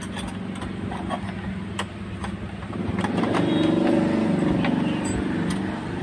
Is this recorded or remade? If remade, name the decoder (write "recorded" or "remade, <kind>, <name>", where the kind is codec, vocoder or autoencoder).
recorded